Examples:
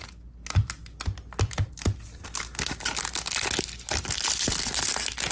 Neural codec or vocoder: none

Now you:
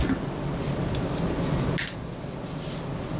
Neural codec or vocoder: none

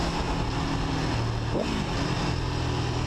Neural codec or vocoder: none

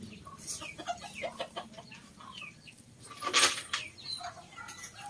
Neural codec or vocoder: none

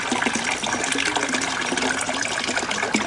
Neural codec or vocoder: none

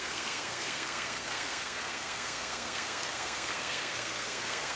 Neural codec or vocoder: codec, SNAC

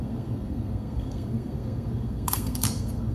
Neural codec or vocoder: codec, SNAC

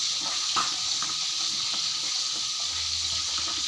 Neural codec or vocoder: none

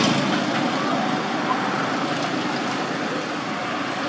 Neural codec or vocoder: none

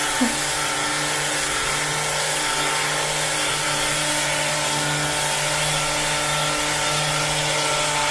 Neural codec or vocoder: none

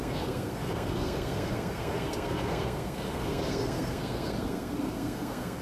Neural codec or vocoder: codec, SNAC